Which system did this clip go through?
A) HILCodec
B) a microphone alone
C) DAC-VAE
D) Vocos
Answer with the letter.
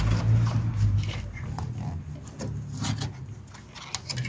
B